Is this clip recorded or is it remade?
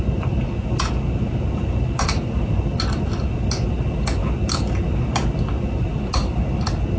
recorded